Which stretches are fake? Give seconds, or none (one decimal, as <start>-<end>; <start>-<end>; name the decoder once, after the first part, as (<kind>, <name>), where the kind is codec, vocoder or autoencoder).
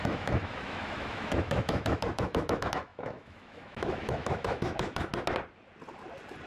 0.0-5.1 (autoencoder, DAC-VAE)